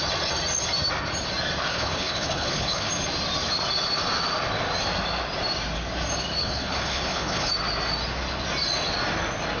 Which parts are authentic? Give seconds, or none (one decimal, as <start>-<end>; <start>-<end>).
0.0-1.7; 2.9-6.4; 7.5-9.6